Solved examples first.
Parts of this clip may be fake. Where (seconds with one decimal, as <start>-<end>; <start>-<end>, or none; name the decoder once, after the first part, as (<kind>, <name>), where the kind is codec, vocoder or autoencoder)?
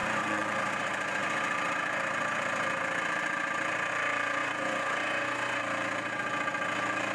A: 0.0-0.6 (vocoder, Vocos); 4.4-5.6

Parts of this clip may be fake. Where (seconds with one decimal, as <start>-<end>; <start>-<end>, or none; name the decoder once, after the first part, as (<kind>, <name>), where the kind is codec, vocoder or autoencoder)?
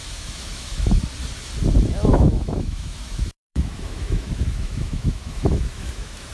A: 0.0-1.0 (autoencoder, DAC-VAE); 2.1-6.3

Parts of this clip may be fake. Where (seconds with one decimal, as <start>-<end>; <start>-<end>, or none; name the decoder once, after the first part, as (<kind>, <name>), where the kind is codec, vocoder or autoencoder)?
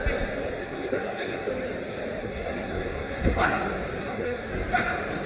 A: 0.6-1.5 (codec, SNAC); 2.2-3.6; 4.0-4.5